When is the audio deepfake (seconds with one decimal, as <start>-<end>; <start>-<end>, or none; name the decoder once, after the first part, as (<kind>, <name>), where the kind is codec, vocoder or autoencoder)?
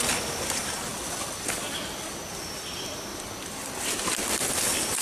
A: none